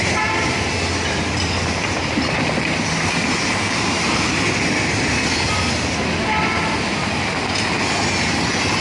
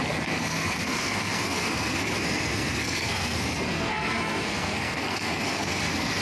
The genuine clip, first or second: first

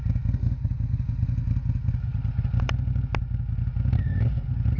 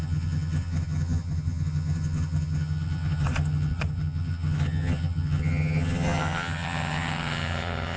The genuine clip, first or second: first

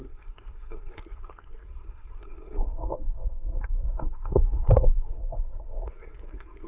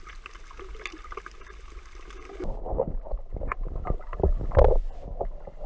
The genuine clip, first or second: second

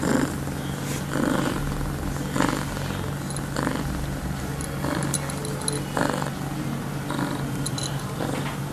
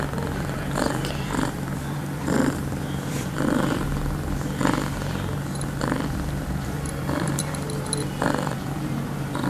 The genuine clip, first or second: first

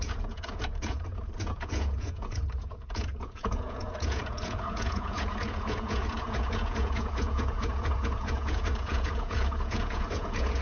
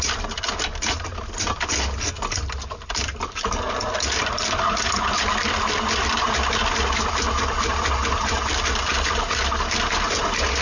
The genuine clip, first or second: second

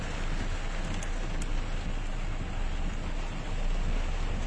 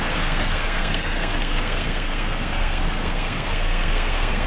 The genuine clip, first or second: first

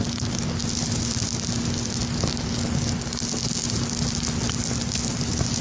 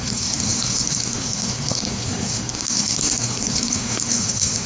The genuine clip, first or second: first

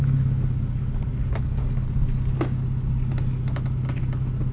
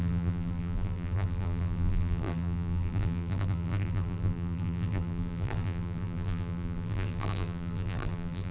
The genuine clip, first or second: first